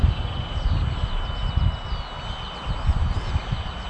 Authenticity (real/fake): real